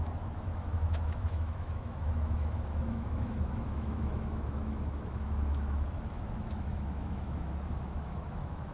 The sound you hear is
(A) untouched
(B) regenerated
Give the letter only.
B